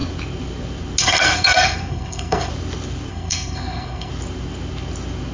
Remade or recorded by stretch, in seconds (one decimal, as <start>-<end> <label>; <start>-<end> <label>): 0.0-1.0 recorded; 1.0-2.5 remade; 2.5-3.1 recorded; 3.1-4.1 remade; 4.1-5.3 recorded